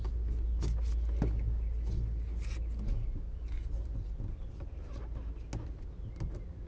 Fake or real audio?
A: real